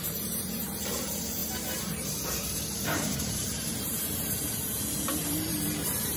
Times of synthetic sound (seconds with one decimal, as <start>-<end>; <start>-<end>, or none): 0.0-6.2